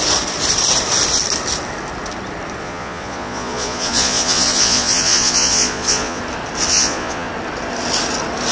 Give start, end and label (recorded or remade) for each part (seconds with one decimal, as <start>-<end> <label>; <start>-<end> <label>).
0.0-2.6 recorded; 2.6-6.2 remade; 6.2-6.7 recorded; 6.7-7.3 remade; 7.3-8.5 recorded